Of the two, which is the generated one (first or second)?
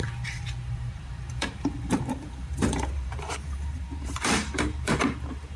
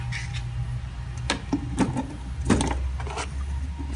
first